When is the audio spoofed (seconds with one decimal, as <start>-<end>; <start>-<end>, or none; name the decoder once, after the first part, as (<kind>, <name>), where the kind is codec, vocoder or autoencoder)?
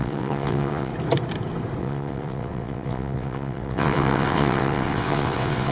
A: 0.0-0.9 (vocoder, WaveNeXt); 1.8-5.7